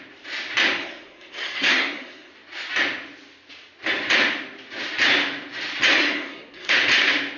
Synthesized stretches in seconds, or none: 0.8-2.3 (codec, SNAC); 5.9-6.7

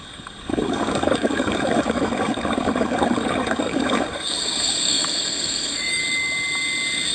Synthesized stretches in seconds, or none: 0.0-6.0 (codec, DAC)

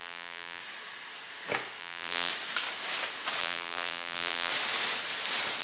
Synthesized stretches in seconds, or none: 0.0-0.6 (vocoder, BigVGAN v2); 1.8-2.3; 3.4-4.5

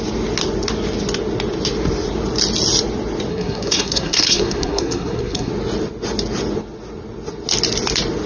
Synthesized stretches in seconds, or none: 3.3-5.5 (codec, SNAC)

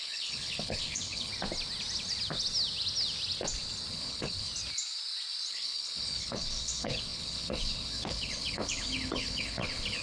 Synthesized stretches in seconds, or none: 0.0-1.3 (codec, HILCodec); 3.9-4.5; 5.5-10.0

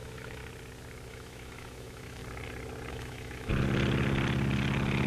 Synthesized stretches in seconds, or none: 0.0-0.4 (autoencoder, DAC-VAE); 1.1-2.2; 2.9-3.5

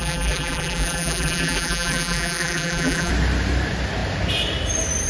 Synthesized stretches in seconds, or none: 0.0-3.1 (vocoder, BigVGAN v2)

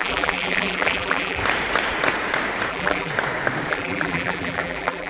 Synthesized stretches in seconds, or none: 0.0-1.4 (vocoder, BigVGAN v2); 2.7-3.1; 3.7-5.1